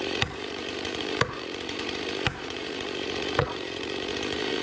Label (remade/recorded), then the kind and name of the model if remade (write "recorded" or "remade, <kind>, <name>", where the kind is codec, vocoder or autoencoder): remade, vocoder, Vocos